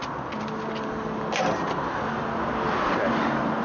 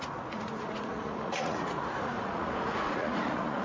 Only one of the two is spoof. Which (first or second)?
second